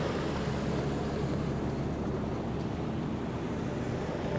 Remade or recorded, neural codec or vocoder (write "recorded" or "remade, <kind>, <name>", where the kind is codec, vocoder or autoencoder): recorded